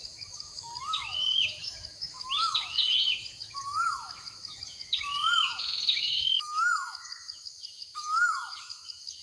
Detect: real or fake fake